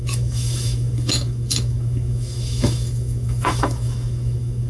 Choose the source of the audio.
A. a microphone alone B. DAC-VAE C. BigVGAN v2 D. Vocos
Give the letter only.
B